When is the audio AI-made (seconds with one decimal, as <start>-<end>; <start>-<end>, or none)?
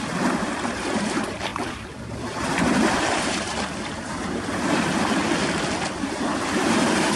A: 0.0-5.4; 6.0-7.2